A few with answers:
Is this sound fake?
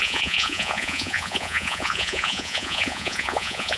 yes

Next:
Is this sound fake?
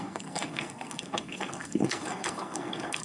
yes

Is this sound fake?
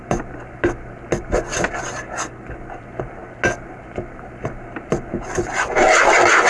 no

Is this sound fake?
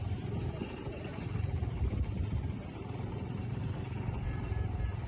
yes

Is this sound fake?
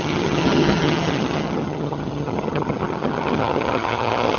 yes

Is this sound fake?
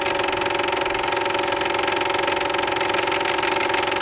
no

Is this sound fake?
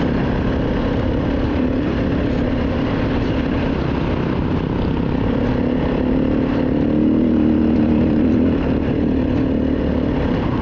no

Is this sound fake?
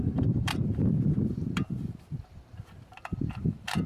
yes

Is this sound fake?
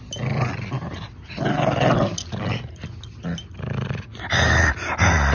no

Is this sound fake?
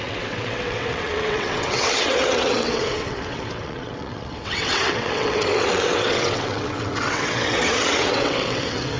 yes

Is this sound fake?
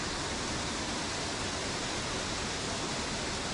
no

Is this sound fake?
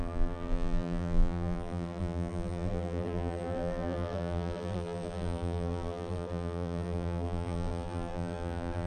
yes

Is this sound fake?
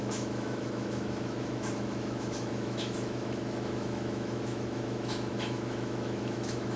yes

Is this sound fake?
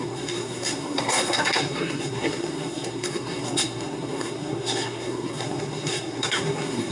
yes